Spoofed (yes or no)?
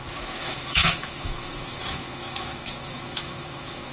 yes